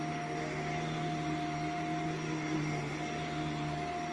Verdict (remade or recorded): recorded